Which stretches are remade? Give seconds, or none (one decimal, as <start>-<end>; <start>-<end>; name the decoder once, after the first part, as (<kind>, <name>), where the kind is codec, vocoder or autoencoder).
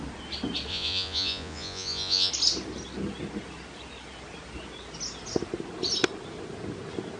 0.7-2.3 (vocoder, Vocos)